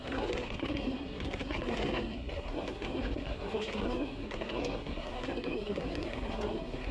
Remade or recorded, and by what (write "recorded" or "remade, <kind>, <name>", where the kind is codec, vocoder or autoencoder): remade, codec, SNAC